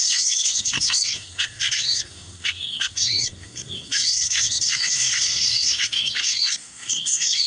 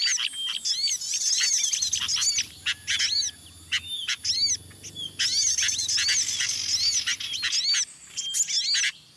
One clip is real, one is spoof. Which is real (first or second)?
second